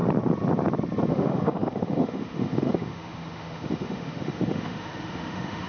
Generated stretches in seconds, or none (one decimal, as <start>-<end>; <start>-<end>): 1.1-5.7